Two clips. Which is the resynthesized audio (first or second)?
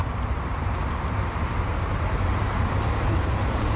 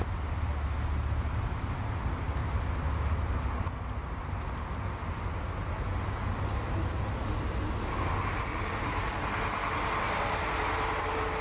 first